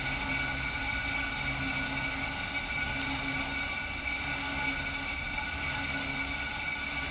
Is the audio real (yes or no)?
yes